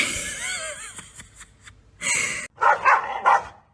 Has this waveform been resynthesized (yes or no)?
no